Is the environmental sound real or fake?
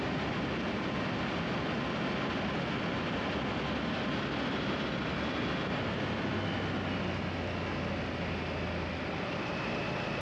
real